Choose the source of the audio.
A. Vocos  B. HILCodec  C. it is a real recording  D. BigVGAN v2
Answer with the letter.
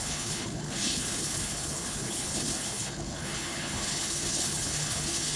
B